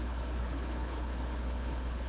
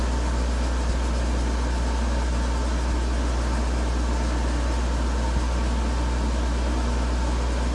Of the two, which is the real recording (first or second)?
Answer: second